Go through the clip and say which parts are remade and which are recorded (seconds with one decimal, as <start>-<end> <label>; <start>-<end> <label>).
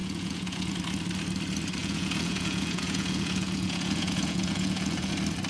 0.0-0.7 remade; 0.7-1.8 recorded; 1.8-5.1 remade; 5.1-5.5 recorded